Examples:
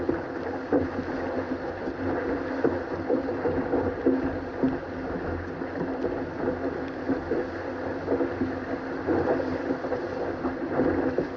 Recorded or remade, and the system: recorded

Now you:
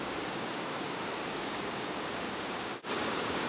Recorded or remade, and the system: remade, codec, DAC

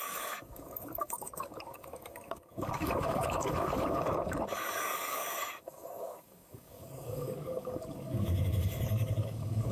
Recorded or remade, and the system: remade, codec, DAC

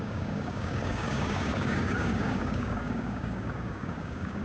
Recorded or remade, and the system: remade, codec, DAC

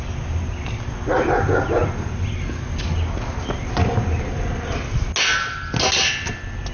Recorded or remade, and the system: recorded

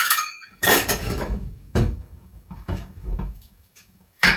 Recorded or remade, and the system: remade, codec, DAC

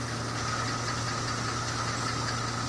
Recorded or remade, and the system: recorded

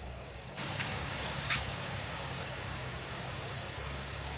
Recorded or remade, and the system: remade, codec, DAC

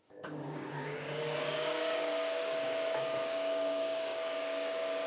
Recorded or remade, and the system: remade, codec, DAC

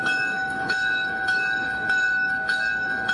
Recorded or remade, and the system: remade, codec, DAC